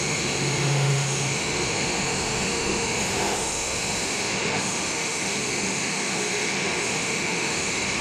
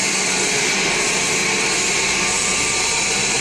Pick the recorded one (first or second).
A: second